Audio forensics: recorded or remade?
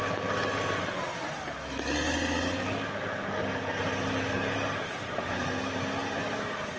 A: recorded